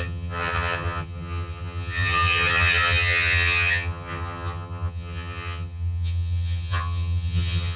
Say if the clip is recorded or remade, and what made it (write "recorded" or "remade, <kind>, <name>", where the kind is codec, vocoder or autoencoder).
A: remade, vocoder, HiFi-GAN